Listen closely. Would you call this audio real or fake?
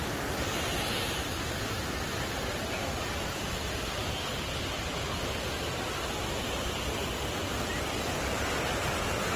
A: real